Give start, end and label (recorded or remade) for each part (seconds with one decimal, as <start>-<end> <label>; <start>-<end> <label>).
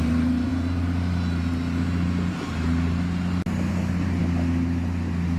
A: 0.0-0.5 remade; 0.5-3.7 recorded; 3.7-4.2 remade; 4.2-5.4 recorded